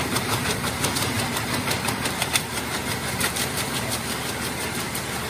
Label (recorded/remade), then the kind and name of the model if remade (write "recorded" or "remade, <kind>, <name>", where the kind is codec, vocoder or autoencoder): remade, vocoder, BigVGAN v2